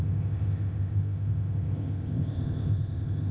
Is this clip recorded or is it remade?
remade